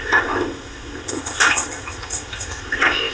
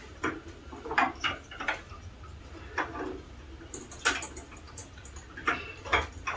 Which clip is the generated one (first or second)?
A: first